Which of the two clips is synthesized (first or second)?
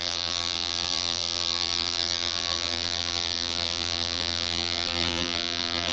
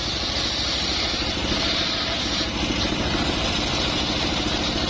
first